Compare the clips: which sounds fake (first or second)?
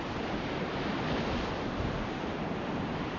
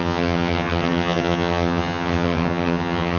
second